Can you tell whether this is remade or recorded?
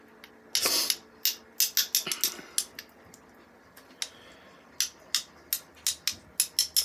recorded